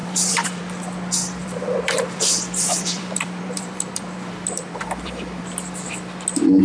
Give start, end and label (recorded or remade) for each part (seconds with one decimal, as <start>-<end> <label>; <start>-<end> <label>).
0.0-0.6 remade; 0.6-1.4 recorded; 1.4-5.4 remade; 5.4-6.6 recorded